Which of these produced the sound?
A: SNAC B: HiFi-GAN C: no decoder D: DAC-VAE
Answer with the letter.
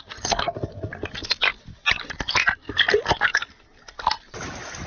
C